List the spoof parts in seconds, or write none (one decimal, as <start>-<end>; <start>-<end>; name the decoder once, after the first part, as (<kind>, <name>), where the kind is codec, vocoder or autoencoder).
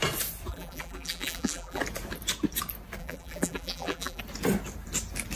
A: 0.5-1.8 (vocoder, BigVGAN v2); 3.0-4.2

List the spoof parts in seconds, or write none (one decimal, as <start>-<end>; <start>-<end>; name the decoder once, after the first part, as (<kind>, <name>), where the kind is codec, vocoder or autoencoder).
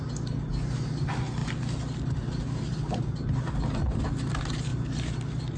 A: none